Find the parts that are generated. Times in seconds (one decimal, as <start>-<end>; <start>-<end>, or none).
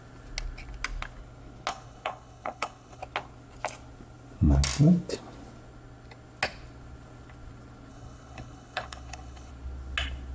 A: 1.7-3.0; 7.9-9.5